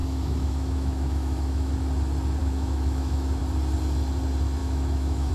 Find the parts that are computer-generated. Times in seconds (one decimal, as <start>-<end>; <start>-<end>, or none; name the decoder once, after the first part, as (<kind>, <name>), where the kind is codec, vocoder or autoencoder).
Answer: 0.0-1.7 (autoencoder, DAC-VAE); 2.4-3.4; 4.6-5.3